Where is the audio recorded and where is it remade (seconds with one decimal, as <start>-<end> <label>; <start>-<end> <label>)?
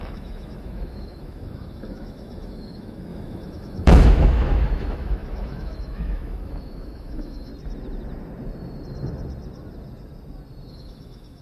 0.0-7.5 remade; 7.5-10.7 recorded; 10.7-11.4 remade